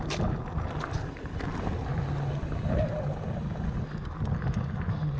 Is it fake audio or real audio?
real